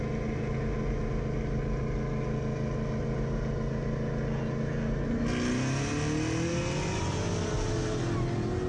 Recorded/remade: recorded